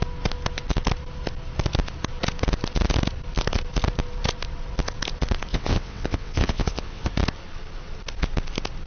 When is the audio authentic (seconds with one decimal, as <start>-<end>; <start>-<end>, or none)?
0.0-5.5; 7.1-8.9